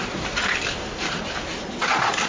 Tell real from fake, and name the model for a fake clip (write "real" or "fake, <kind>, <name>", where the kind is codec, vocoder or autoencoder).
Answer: real